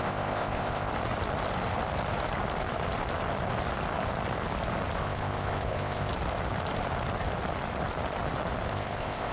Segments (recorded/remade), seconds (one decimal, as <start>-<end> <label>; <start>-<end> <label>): 0.0-0.9 remade; 0.9-5.0 recorded; 5.0-6.1 remade; 6.1-8.7 recorded; 8.7-9.3 remade